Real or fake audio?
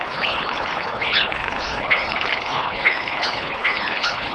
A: fake